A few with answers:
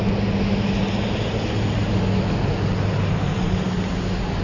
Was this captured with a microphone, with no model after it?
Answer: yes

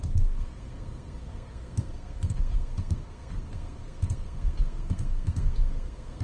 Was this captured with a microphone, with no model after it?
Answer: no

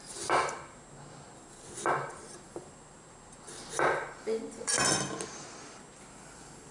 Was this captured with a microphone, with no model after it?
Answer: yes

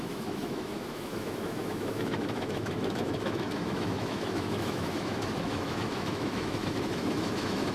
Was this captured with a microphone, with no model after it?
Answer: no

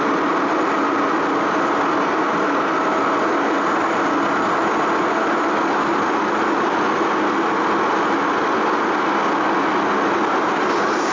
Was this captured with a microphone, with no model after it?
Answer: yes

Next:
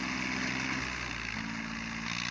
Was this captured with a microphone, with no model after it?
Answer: yes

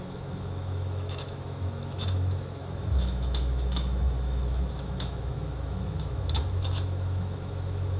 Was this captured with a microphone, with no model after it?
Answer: no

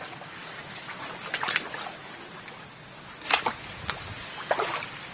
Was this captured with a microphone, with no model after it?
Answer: yes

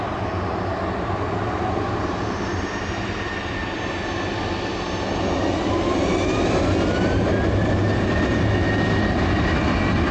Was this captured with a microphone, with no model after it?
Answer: yes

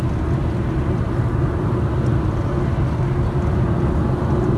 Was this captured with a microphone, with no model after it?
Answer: yes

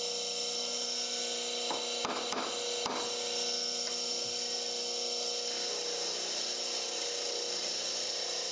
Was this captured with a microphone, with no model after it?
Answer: yes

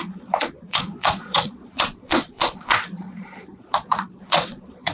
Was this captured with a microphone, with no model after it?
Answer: no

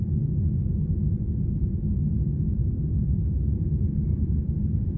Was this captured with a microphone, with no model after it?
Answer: no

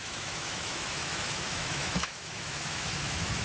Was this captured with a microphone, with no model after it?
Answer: no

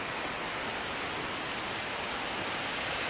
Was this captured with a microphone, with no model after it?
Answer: yes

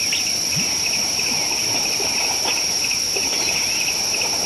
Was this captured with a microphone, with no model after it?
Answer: yes